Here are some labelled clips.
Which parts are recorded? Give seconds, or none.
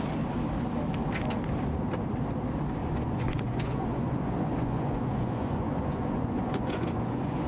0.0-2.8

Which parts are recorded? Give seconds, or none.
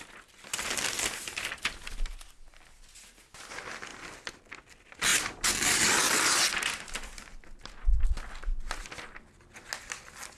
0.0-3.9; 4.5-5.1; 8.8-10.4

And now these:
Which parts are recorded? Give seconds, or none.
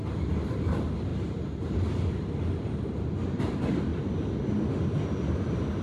0.0-5.8